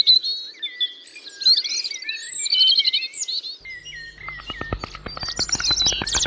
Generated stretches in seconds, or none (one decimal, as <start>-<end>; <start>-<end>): none